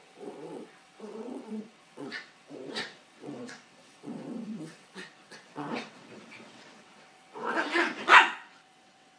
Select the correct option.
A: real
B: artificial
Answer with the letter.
B